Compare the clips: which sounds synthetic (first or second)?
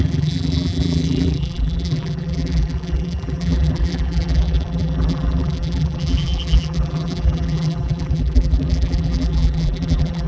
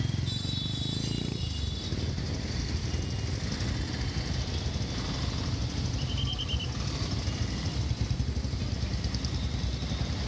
first